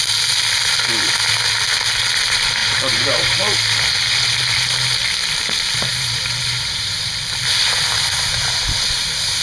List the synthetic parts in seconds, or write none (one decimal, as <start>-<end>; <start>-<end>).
2.6-3.4; 5.9-7.1